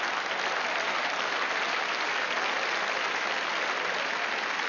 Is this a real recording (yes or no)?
yes